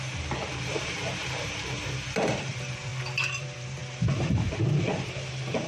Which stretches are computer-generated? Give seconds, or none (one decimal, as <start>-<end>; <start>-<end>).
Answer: 0.0-2.9; 3.4-5.7